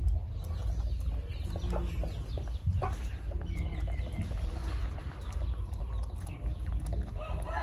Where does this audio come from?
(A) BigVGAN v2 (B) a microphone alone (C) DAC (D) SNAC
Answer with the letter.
B